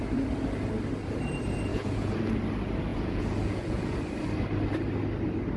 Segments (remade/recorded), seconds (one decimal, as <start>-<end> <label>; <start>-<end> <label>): 0.0-1.7 recorded; 1.7-2.3 remade; 2.3-2.9 recorded; 2.9-3.9 remade; 3.9-5.6 recorded

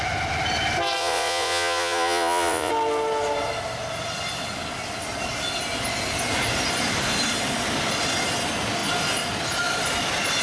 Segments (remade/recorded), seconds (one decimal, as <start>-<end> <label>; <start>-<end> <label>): 0.0-1.0 recorded; 1.0-2.7 remade; 2.7-10.4 recorded

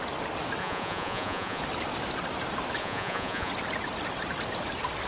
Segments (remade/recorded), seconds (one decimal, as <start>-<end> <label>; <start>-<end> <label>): 0.0-0.6 recorded; 0.6-1.6 remade; 1.6-2.8 recorded; 2.8-3.5 remade; 3.5-5.1 recorded

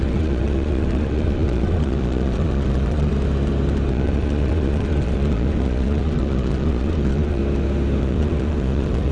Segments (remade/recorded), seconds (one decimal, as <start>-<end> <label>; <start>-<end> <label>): 0.0-3.1 remade; 3.1-3.9 recorded; 3.9-7.4 remade; 7.4-8.0 recorded; 8.0-9.1 remade

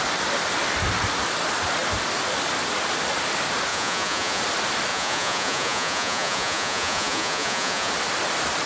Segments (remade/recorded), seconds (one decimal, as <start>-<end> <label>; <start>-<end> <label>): 0.0-3.7 recorded; 3.7-4.4 remade; 4.4-4.9 recorded; 4.9-7.9 remade; 7.9-8.7 recorded

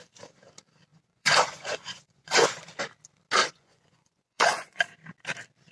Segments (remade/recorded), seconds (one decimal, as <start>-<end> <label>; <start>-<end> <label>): 0.0-0.9 recorded; 0.9-2.6 remade; 2.6-3.4 recorded; 3.4-4.8 remade; 4.8-5.7 recorded

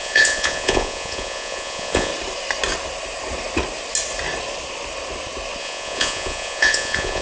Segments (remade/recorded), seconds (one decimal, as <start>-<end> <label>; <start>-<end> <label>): 0.0-2.1 remade; 2.1-5.6 recorded; 5.6-7.2 remade